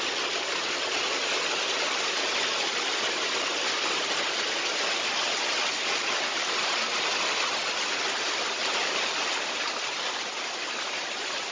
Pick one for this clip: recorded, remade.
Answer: recorded